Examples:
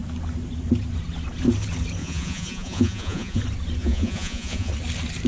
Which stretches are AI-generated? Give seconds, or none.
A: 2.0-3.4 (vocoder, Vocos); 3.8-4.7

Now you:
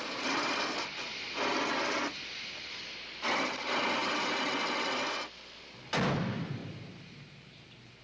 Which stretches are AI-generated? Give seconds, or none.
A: none

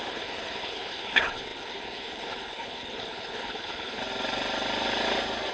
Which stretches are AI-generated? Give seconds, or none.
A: 0.0-4.0 (codec, HILCodec)

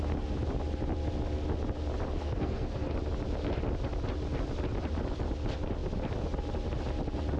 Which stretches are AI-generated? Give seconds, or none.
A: 2.2-2.9 (codec, SNAC)

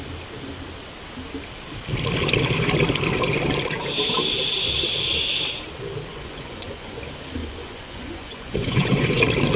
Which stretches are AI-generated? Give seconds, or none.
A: 6.1-7.0 (vocoder, Vocos); 7.4-9.2

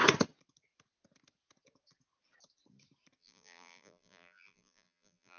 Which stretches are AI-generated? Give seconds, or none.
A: 3.2-5.4 (vocoder, BigVGAN v2)